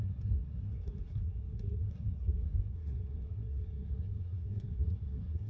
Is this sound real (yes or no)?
no